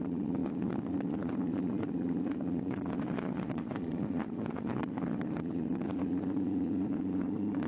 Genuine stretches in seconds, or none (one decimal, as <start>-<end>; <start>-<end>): none